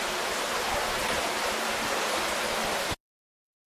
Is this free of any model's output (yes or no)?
yes